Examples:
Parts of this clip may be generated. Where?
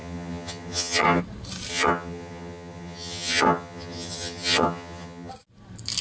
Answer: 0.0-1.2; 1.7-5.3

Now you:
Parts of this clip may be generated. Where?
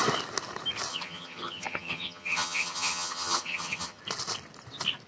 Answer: 0.9-4.0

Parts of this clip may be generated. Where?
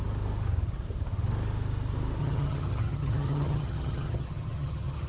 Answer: 2.2-5.1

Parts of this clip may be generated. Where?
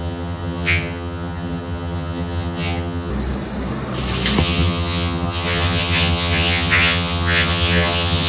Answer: 0.0-3.1; 4.4-8.3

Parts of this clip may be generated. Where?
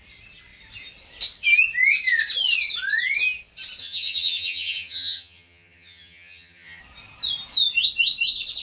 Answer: 3.8-6.8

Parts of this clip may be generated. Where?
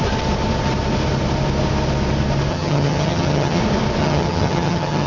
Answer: 2.5-3.6; 4.0-5.1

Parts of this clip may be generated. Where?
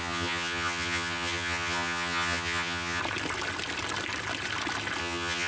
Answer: 0.0-3.0; 5.0-5.5